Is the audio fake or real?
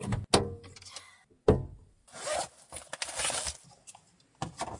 real